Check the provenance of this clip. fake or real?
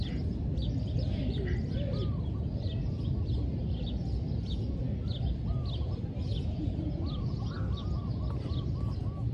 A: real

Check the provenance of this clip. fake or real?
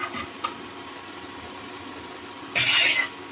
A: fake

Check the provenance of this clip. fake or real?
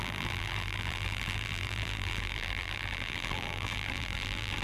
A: fake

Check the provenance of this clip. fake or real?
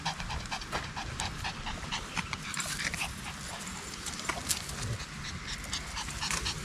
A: real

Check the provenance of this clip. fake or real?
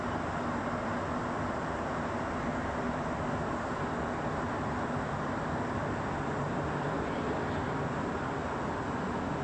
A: real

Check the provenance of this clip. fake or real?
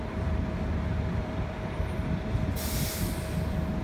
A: fake